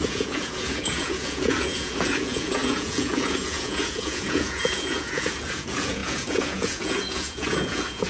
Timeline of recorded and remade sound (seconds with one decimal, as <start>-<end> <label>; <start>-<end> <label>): 0.0-8.1 remade